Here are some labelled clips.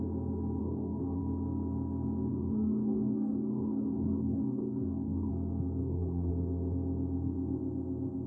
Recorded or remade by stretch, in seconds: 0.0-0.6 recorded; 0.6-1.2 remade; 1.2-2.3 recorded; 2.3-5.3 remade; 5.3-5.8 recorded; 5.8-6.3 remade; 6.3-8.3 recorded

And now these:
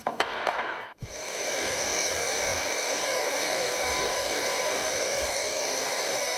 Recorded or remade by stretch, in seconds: 0.0-6.4 remade